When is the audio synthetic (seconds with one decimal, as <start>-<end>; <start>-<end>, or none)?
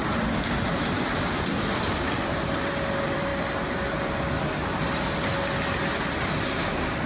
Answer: 0.0-3.3; 6.3-7.1